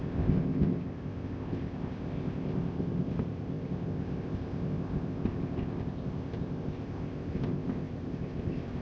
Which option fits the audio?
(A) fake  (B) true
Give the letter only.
A